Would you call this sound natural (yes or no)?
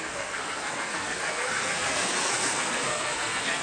no